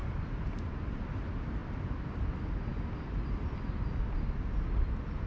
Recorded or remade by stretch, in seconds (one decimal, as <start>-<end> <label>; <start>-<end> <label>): 0.0-5.3 recorded

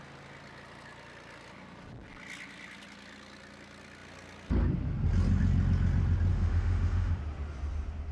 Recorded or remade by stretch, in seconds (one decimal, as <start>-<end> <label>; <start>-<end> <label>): 0.0-6.3 recorded; 6.3-7.2 remade; 7.2-8.1 recorded